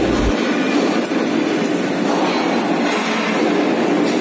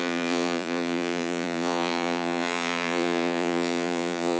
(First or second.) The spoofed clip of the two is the second